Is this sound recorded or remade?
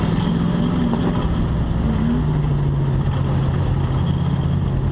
recorded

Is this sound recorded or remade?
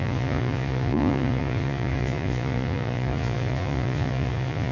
remade